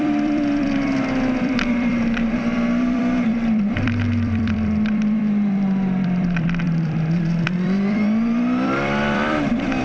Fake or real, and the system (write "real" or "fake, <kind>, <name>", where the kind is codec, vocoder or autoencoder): fake, vocoder, BigVGAN v2